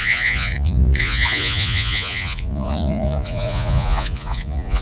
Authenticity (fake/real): fake